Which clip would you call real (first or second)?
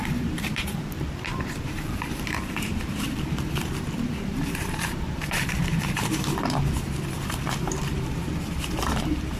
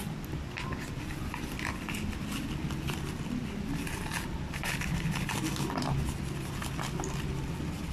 second